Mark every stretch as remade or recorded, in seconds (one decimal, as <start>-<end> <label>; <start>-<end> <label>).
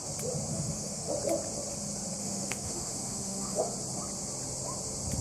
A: 0.0-0.5 recorded; 0.5-1.1 remade; 1.1-2.2 recorded; 2.2-3.6 remade; 3.6-5.2 recorded